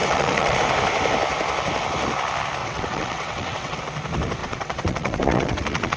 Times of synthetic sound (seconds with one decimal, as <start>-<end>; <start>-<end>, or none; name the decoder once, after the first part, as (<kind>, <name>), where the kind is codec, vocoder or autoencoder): 0.0-0.6 (vocoder, WaveNeXt); 2.6-3.8; 4.4-6.0